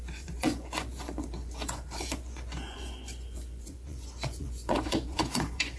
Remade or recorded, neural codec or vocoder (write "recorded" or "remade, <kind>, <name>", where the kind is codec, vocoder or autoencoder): remade, vocoder, Vocos